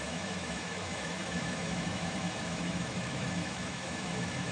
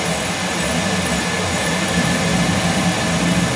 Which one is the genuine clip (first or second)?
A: second